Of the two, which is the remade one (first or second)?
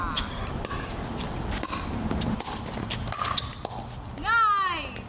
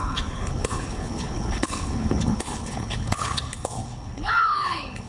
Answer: second